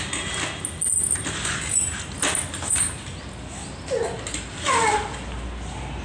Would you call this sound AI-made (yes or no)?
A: no